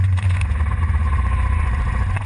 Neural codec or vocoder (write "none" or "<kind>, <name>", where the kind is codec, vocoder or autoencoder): vocoder, Vocos